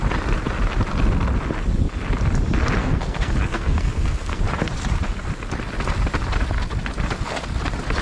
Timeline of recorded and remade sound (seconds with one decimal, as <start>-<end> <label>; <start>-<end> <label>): 0.0-2.8 recorded; 2.8-4.4 remade; 4.4-8.0 recorded